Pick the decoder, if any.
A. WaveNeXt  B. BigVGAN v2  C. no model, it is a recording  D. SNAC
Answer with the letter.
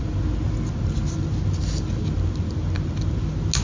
C